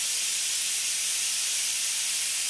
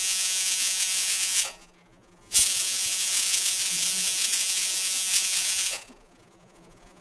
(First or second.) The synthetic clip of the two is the second